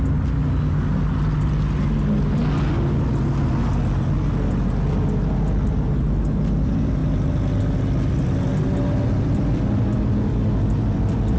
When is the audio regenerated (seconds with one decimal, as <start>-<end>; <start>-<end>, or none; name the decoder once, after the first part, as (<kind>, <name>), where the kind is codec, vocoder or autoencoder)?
none